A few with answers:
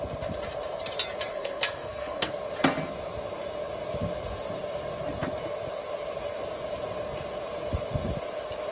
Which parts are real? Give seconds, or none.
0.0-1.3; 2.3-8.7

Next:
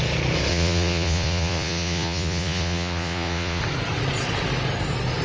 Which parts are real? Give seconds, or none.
0.0-0.5; 3.6-5.2

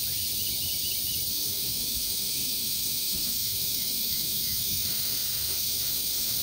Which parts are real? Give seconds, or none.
0.0-1.3

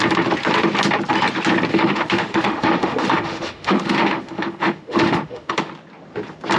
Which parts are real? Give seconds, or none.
0.0-1.7; 5.7-6.6

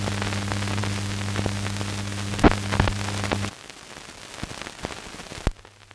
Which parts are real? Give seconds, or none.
0.0-5.9

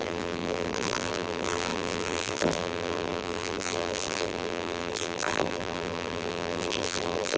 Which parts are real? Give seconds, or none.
none